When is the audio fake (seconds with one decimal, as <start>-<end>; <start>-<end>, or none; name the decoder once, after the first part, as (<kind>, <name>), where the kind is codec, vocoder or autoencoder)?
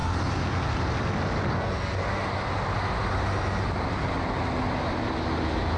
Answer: none